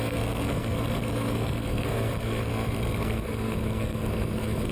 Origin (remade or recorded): remade